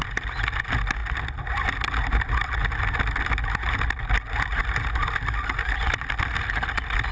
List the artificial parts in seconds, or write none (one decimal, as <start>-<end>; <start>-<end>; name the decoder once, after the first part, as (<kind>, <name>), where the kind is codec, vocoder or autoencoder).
none